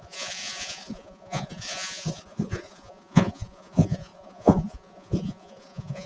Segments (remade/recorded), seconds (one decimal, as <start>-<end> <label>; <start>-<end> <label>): 0.0-6.1 remade